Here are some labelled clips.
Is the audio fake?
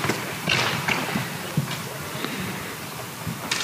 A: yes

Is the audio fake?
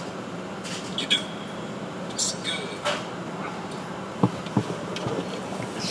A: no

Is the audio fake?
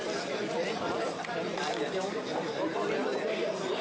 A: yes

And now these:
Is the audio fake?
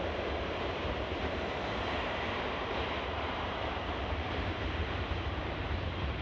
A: yes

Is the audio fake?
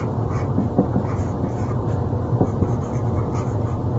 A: yes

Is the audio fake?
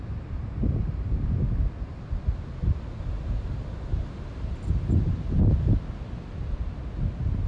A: no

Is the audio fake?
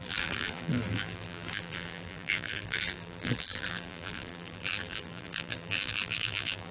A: yes